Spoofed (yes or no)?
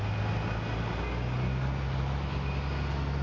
no